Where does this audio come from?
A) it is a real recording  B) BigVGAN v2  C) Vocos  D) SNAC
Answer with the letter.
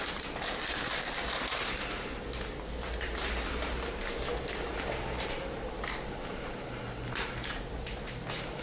B